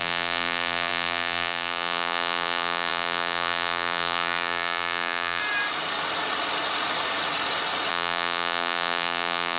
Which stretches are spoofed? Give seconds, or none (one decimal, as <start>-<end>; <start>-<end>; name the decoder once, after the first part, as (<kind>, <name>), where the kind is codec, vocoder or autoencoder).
0.0-5.4 (vocoder, BigVGAN v2); 7.9-9.6